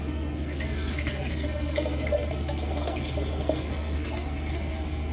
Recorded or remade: remade